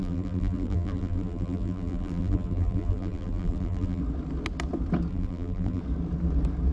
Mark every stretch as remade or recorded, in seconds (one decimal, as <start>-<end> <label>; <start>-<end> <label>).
0.0-4.0 remade; 4.0-5.1 recorded; 5.1-5.8 remade; 5.8-6.7 recorded